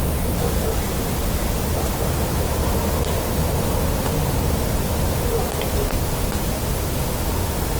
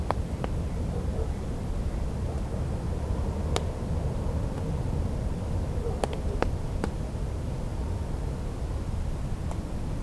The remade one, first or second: second